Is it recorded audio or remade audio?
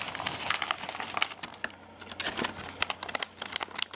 recorded